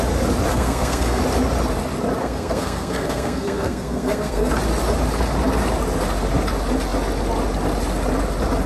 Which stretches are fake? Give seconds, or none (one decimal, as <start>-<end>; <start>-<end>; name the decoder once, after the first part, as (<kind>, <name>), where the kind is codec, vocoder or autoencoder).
0.5-1.2 (codec, SNAC); 2.2-4.5